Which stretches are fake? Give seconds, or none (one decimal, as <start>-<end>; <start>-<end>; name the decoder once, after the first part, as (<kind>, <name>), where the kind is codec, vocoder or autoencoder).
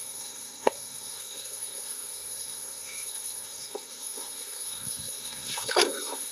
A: 0.0-6.3 (codec, SNAC)